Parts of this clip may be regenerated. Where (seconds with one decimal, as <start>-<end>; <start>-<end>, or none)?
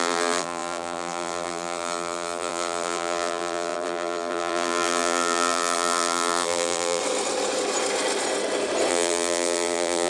0.0-7.0; 8.9-10.1